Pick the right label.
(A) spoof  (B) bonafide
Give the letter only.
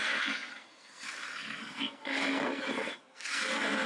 A